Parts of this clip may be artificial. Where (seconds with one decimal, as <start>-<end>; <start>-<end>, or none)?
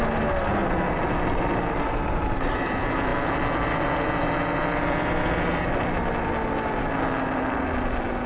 none